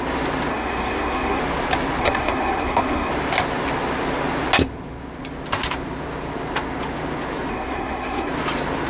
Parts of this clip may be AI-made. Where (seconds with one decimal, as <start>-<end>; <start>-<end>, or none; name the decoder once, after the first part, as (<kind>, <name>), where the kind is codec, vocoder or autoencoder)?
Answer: 0.5-1.4 (codec, SNAC); 2.0-3.1; 7.5-8.3